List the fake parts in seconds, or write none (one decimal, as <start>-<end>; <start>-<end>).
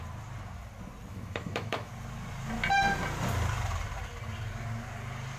1.1-1.9